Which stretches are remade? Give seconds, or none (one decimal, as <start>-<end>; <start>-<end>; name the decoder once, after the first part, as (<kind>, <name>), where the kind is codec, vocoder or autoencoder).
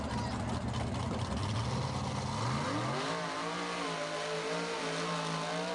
none